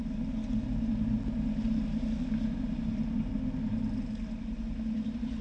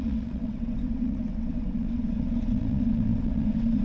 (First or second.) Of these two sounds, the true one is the first